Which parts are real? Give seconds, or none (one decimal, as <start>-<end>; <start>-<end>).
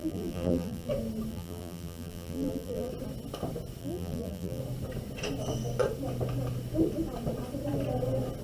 0.9-1.3; 2.9-3.8; 4.6-8.4